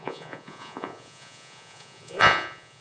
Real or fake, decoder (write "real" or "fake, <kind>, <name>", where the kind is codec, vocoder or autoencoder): fake, vocoder, Vocos